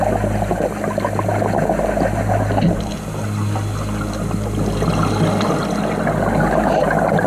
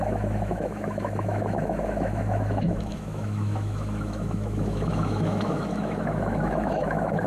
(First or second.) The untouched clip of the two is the first